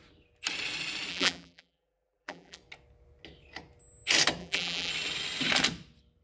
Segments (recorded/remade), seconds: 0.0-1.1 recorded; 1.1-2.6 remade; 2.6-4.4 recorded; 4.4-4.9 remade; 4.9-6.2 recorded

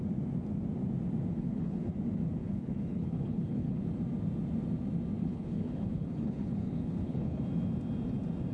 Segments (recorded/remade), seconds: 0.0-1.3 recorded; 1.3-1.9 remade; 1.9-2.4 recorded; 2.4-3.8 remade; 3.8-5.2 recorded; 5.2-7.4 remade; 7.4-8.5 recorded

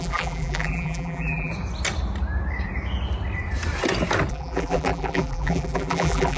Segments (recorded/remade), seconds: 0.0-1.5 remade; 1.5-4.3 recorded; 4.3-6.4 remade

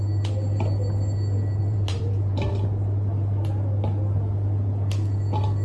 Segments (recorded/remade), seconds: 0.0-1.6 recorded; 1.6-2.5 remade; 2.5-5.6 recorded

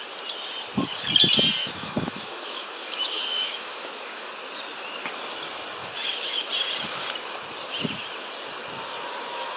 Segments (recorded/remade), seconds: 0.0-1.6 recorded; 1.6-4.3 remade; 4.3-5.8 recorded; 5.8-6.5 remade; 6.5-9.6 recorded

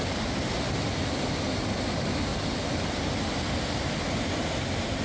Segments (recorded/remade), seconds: 0.0-5.0 recorded

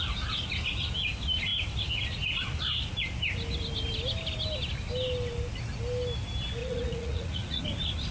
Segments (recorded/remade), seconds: 0.0-6.6 recorded; 6.6-7.6 remade; 7.6-8.1 recorded

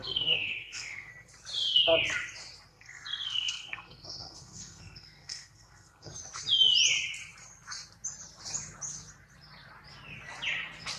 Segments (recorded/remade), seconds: 0.0-1.1 remade; 1.1-2.7 recorded; 2.7-6.1 remade; 6.1-11.0 recorded